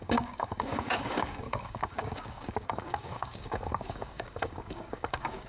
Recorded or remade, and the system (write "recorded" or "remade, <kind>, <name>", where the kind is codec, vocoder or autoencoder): remade, codec, DAC